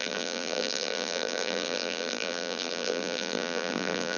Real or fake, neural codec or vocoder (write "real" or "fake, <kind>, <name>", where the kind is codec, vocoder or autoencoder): fake, vocoder, BigVGAN v2